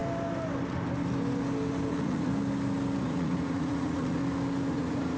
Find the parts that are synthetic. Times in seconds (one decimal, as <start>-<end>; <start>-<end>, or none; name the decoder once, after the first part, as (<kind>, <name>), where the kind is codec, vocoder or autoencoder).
1.9-2.3 (vocoder, Vocos); 3.0-4.2; 4.7-5.2